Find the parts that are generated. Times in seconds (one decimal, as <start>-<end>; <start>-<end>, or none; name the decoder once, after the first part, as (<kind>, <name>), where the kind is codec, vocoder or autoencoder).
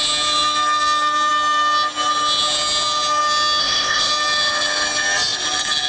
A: 3.6-4.1 (codec, ZipCodec)